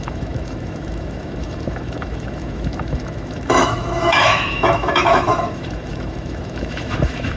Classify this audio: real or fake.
fake